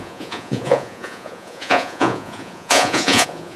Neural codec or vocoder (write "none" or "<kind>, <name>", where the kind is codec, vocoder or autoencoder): vocoder, Vocos